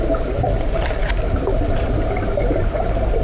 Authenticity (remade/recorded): recorded